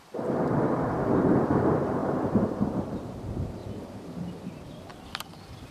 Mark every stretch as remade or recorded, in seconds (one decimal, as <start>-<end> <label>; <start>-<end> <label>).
0.0-3.6 remade; 3.6-4.5 recorded; 4.5-5.7 remade